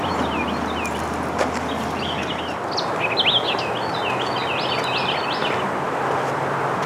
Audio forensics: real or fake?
real